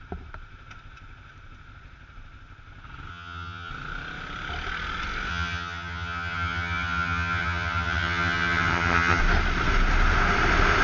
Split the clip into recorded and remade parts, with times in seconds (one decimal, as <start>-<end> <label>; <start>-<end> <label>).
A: 0.0-3.1 recorded; 3.1-3.7 remade; 3.7-5.3 recorded; 5.3-9.2 remade; 9.2-10.8 recorded